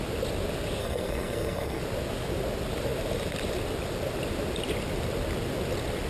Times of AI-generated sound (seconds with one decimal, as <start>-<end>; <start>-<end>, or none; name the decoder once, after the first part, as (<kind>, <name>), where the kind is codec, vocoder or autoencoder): 0.8-1.8 (codec, SNAC)